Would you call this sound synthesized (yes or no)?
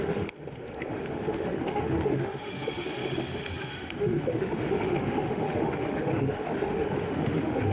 yes